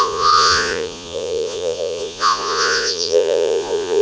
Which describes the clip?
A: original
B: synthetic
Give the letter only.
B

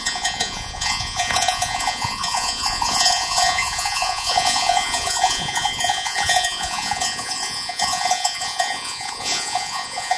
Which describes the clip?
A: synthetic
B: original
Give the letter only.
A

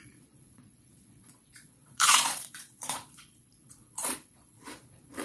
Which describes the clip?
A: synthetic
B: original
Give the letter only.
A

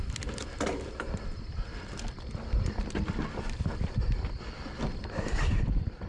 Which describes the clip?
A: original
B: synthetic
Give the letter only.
A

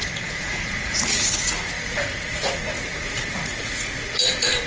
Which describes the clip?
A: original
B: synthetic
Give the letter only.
B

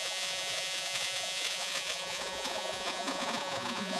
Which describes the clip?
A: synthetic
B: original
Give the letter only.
A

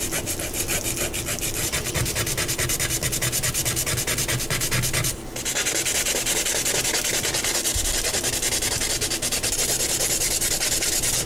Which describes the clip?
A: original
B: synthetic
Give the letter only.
A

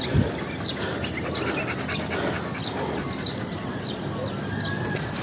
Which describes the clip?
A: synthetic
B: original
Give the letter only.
B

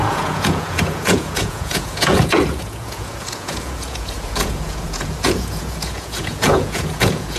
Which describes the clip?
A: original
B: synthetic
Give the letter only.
B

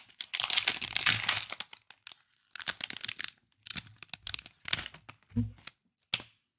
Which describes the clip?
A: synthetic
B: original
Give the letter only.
B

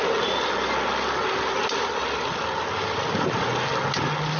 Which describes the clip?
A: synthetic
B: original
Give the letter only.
B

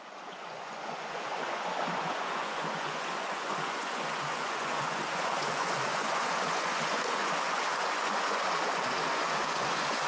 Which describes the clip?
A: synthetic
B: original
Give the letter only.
A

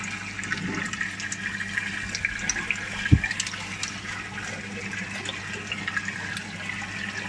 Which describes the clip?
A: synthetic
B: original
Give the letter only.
B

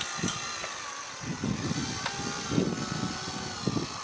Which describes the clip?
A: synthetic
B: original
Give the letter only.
B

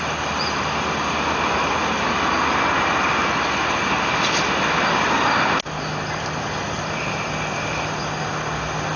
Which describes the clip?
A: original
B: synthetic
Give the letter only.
A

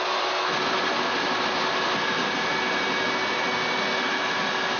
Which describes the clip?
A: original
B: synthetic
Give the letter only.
A